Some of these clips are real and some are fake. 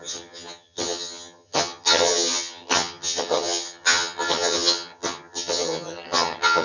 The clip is fake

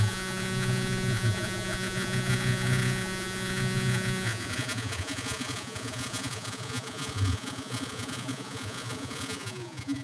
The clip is fake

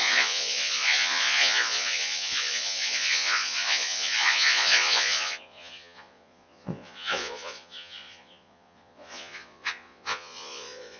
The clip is fake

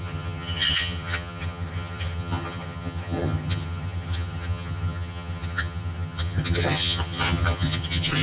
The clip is fake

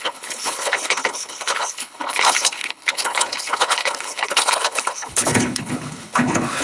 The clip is fake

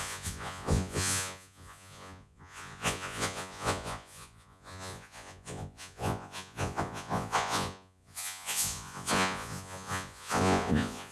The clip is fake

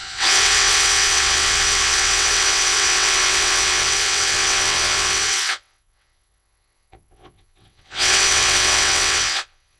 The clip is fake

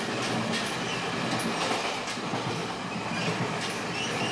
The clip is real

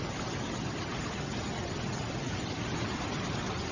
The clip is real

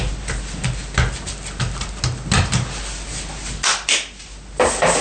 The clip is real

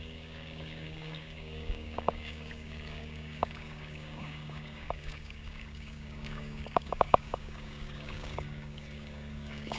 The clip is fake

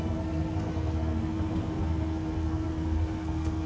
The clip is fake